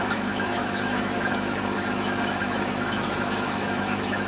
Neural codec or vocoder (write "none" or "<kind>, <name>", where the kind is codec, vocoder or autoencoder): autoencoder, DAC-VAE